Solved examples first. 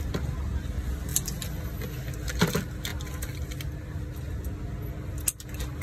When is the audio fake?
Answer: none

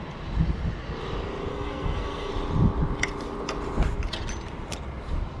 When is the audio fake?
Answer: 1.5-2.3 (codec, SNAC)